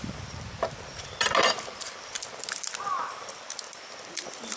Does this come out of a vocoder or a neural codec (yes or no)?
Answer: yes